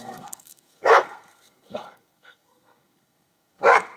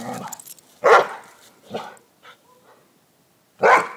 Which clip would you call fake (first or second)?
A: first